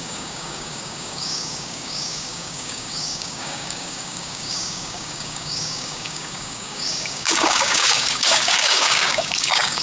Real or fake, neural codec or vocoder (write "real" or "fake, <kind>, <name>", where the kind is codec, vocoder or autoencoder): fake, codec, DAC